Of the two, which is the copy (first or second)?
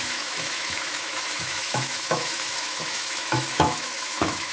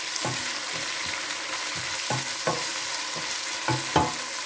first